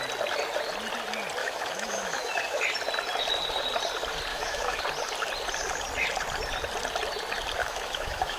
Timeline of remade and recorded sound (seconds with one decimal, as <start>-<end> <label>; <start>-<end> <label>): 0.0-1.4 recorded; 1.4-2.6 remade; 2.6-4.3 recorded; 4.3-4.8 remade; 4.8-7.6 recorded; 7.6-8.4 remade